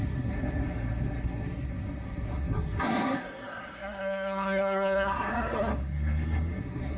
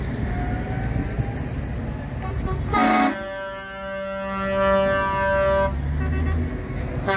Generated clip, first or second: first